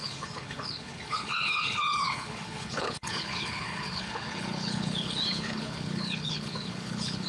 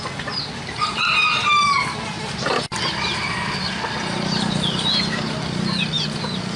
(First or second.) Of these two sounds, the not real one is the first